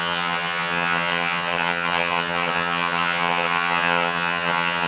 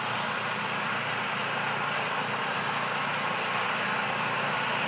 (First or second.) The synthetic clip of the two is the first